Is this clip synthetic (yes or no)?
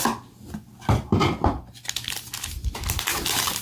no